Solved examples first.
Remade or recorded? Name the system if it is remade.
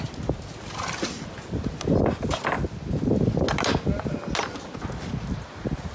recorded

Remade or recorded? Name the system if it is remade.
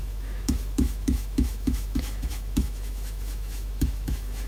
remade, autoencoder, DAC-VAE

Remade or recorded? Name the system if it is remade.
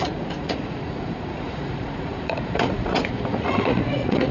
remade, vocoder, Vocos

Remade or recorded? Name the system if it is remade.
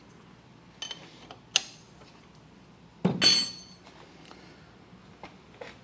recorded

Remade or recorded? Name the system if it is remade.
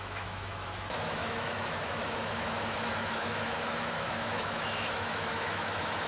remade, autoencoder, DAC-VAE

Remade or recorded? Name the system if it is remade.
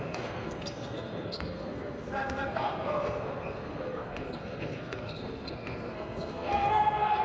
remade, codec, SNAC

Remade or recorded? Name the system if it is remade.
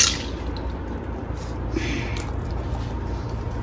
recorded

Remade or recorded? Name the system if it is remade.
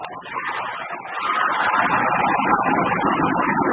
recorded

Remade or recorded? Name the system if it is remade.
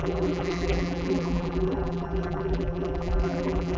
remade, vocoder, BigVGAN v2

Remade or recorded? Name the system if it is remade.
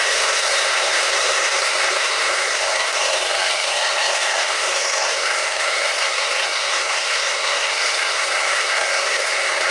remade, codec, SNAC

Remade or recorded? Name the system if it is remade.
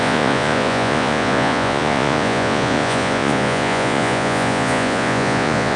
remade, vocoder, Vocos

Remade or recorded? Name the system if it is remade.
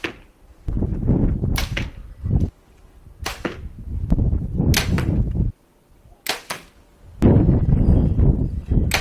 recorded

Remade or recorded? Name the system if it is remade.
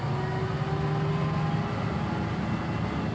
recorded